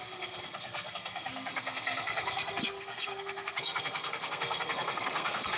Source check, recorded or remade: remade